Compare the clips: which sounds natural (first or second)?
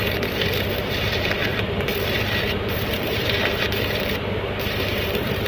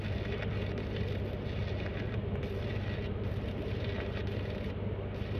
second